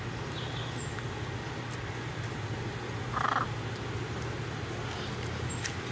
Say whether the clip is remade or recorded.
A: recorded